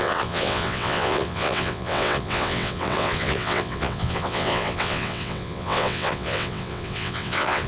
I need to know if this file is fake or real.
fake